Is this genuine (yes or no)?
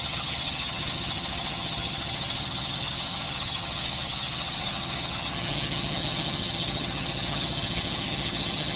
no